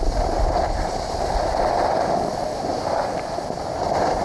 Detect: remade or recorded recorded